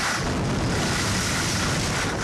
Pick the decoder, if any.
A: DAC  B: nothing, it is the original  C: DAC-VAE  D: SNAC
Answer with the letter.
B